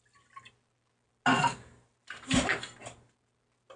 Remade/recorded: recorded